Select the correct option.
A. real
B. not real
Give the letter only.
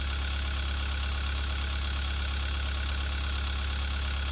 A